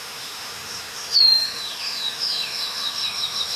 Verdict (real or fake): fake